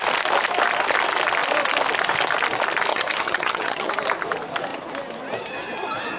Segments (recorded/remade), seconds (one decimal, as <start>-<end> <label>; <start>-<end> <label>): 0.0-2.9 recorded; 2.9-3.9 remade; 3.9-6.2 recorded